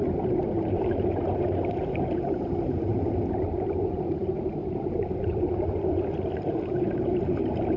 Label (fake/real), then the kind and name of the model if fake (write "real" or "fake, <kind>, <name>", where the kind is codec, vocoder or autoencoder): fake, vocoder, BigVGAN v2